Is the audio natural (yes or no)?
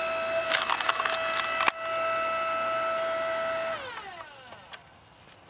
yes